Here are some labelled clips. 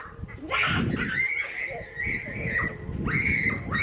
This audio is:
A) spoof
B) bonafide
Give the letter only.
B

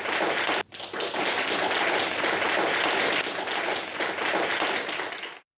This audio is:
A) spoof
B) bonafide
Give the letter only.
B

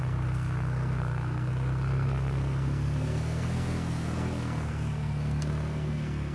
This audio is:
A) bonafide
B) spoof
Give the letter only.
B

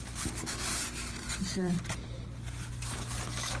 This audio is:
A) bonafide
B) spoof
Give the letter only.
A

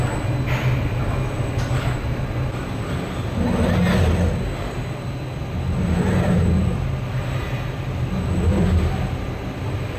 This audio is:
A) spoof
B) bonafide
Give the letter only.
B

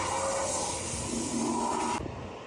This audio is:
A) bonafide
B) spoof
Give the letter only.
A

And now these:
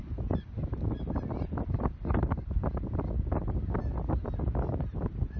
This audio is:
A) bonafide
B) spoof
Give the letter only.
A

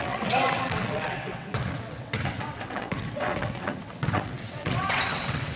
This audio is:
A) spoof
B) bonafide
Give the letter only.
A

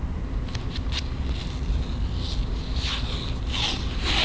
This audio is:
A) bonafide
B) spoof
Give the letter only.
A